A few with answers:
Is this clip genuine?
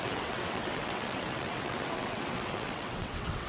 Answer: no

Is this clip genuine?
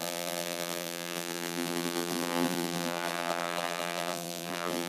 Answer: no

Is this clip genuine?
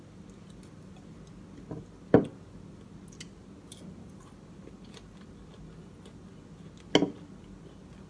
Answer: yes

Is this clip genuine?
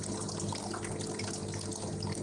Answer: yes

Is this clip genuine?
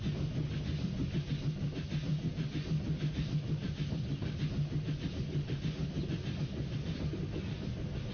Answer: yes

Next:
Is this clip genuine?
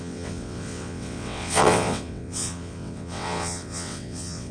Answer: no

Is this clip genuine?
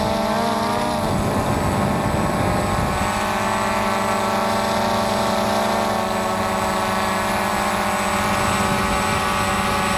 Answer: yes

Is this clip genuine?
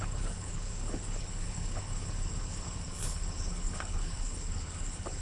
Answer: no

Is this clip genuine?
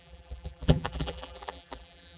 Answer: no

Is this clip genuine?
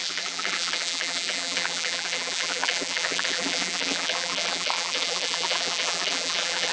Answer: no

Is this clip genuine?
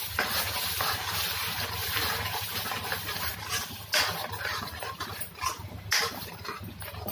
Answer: yes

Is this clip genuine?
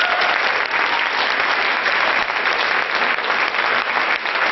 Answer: yes